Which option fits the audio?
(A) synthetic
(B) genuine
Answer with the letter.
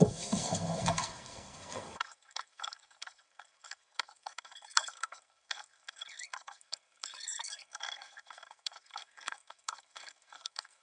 A